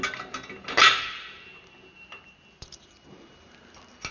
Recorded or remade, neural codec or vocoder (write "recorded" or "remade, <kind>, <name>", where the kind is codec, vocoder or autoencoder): recorded